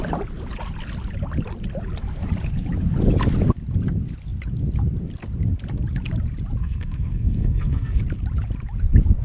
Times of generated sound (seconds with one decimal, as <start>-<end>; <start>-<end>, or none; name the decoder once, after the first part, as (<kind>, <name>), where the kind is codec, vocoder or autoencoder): 6.6-8.0 (codec, SNAC)